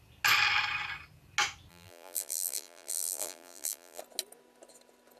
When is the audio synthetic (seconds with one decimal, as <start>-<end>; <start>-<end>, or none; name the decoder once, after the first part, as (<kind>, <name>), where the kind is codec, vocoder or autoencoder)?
1.7-4.0 (vocoder, BigVGAN v2)